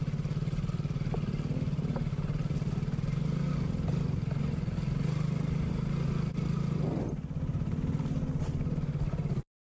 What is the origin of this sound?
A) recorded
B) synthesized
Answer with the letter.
A